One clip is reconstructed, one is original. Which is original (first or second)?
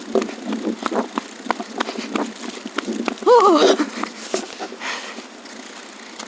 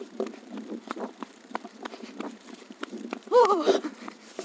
first